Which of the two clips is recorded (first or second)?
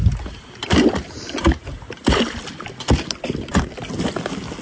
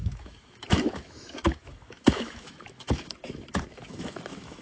first